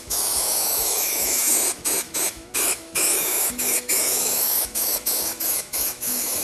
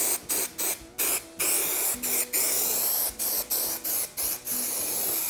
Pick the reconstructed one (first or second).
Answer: first